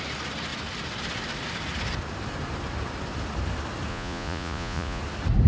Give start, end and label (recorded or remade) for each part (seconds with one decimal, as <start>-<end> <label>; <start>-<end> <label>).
0.0-3.9 recorded; 3.9-5.0 remade; 5.0-5.5 recorded